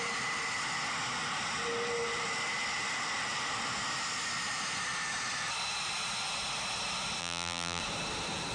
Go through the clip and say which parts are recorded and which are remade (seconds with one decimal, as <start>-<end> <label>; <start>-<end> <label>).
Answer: 0.0-7.2 recorded; 7.2-7.8 remade; 7.8-8.5 recorded